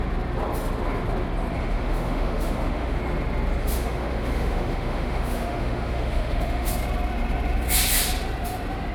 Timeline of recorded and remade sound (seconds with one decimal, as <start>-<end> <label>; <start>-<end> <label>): 0.0-1.6 recorded; 1.6-3.0 remade; 3.0-3.6 recorded; 3.6-6.7 remade; 6.7-8.9 recorded